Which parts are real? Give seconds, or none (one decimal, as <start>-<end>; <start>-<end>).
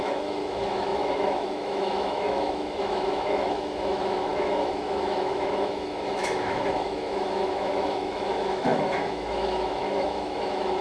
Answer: none